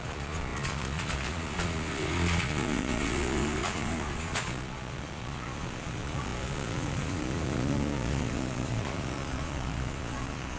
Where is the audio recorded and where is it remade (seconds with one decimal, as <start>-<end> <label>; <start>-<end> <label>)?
0.0-10.6 remade